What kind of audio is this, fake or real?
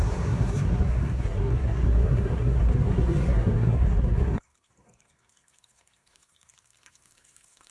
fake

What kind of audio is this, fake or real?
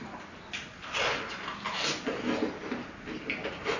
real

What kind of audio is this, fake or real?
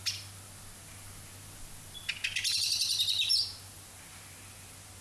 real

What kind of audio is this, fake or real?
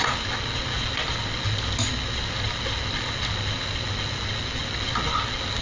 real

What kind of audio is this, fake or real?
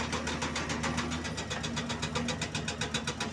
real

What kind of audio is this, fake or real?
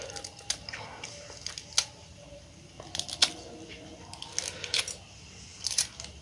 real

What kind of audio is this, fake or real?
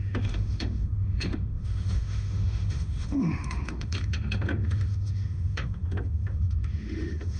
fake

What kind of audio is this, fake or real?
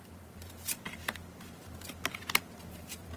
real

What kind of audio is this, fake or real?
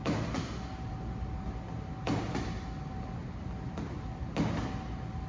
real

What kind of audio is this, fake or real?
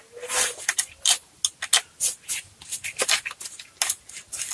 real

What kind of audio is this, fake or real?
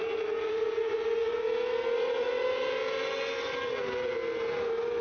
real